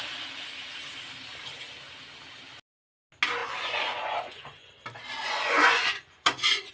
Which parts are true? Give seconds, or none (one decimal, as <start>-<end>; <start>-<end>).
0.0-3.4; 4.7-5.2